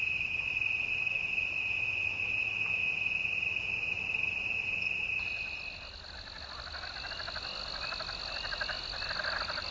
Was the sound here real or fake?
real